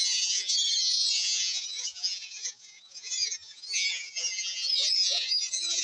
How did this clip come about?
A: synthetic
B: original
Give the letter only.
A